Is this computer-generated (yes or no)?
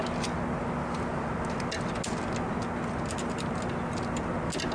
no